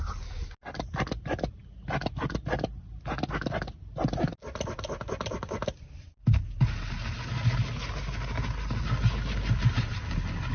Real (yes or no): yes